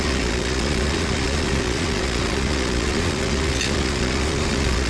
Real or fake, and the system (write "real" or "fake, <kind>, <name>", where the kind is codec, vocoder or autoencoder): fake, vocoder, Vocos